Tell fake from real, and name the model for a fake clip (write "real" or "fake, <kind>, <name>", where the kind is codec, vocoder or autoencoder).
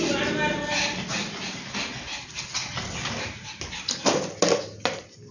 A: real